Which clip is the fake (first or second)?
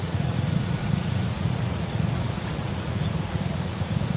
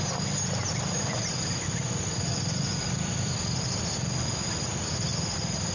first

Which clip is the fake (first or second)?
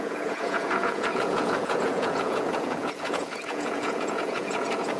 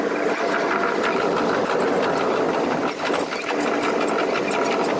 first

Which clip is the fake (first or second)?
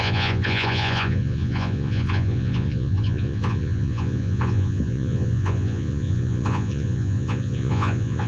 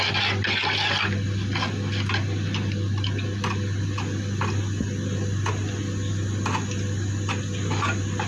first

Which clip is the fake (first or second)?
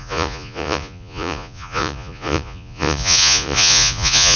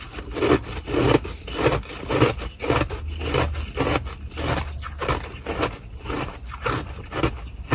first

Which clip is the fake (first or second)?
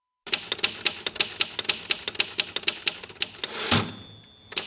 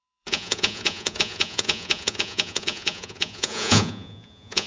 second